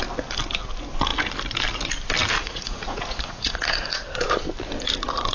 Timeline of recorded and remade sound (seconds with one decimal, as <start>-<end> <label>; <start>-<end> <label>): 0.0-2.4 recorded; 2.4-3.9 remade; 3.9-5.3 recorded